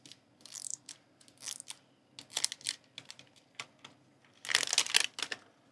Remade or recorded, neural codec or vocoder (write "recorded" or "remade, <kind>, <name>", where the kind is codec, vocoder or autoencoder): recorded